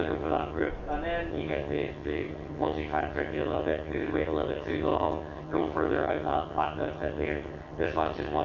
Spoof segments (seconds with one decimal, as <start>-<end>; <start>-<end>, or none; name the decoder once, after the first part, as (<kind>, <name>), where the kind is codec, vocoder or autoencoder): 0.0-0.7 (vocoder, HiFi-GAN); 1.3-8.4